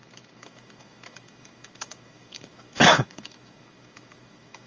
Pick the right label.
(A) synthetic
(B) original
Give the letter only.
A